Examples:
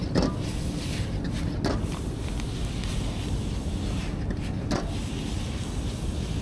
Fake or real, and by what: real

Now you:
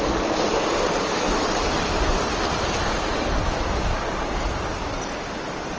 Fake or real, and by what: real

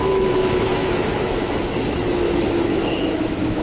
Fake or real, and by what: fake, autoencoder, DAC-VAE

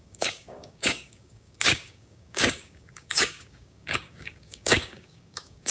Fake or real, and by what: fake, codec, DAC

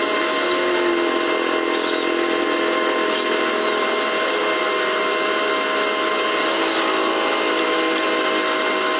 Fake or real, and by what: real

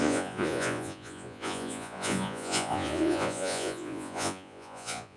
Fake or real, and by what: fake, vocoder, Vocos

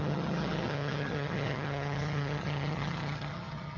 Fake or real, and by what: fake, vocoder, HiFi-GAN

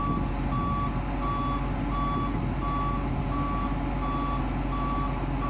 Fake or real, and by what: real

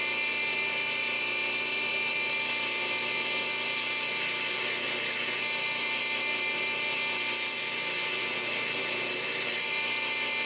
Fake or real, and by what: real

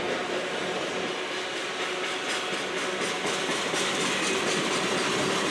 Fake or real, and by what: real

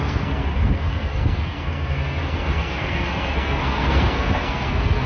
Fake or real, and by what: fake, codec, SNAC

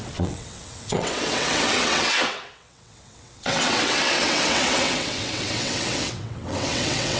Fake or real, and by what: fake, vocoder, WaveNeXt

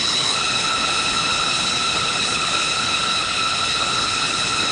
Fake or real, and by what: fake, codec, HILCodec